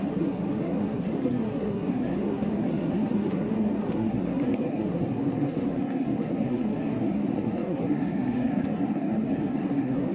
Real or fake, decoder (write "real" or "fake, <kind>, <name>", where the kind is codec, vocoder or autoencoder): fake, codec, SNAC